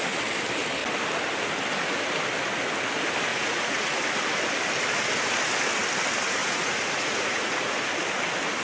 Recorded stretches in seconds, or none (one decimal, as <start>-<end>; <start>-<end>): 0.0-3.3; 4.0-6.4; 7.9-8.6